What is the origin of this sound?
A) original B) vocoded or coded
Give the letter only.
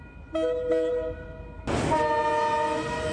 A